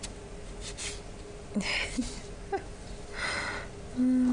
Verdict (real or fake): real